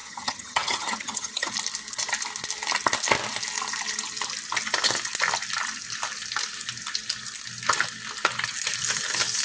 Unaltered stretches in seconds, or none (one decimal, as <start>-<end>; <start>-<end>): 1.5-9.4